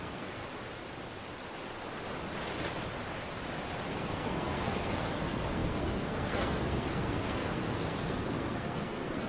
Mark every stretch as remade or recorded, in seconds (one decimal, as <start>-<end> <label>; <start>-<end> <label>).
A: 0.0-0.5 remade; 0.5-3.9 recorded; 3.9-9.3 remade